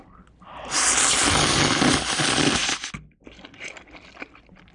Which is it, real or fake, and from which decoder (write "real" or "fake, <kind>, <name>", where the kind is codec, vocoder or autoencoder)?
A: real